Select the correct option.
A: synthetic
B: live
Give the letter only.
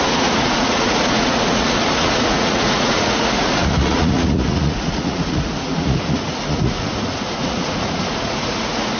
A